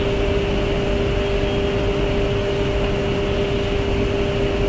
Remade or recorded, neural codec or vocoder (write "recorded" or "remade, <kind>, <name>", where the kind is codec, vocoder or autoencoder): recorded